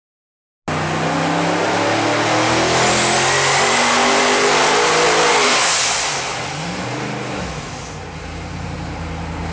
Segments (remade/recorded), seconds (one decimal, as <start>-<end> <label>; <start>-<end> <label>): 0.0-9.5 recorded